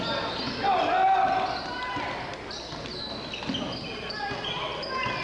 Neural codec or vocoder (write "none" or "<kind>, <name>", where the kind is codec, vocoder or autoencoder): none